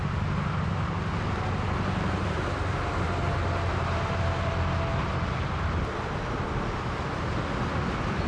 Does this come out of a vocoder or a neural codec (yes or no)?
no